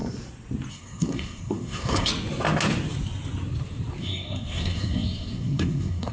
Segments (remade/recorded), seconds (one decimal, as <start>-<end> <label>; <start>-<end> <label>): 0.0-0.7 recorded; 0.7-2.1 remade; 2.1-4.0 recorded; 4.0-6.1 remade